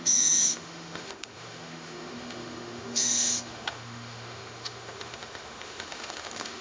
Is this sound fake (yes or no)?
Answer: yes